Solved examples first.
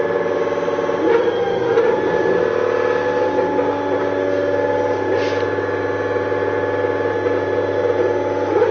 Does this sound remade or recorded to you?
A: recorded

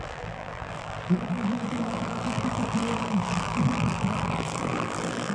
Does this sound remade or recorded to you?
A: remade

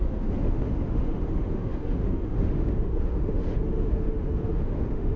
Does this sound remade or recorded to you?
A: remade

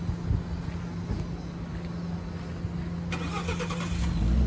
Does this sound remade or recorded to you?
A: recorded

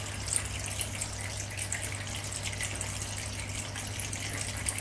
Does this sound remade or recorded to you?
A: recorded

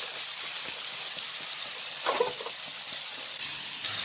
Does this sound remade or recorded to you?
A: remade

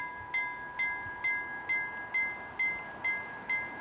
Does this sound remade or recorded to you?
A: recorded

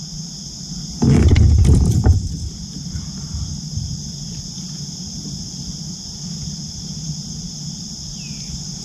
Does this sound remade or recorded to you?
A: recorded